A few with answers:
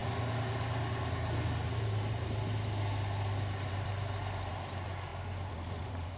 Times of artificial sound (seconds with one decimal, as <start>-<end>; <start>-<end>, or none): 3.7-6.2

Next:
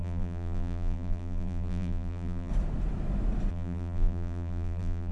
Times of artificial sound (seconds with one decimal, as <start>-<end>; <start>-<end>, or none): 0.0-2.5; 3.5-5.1

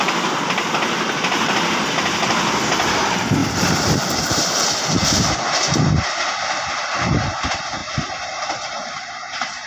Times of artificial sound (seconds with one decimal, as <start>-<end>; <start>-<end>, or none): 3.4-5.5; 7.8-9.1

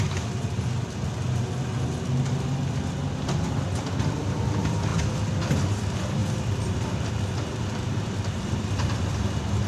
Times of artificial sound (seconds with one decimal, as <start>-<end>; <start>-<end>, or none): 6.2-9.1

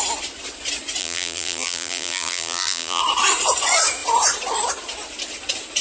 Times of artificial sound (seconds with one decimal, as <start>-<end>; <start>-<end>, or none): 1.0-3.0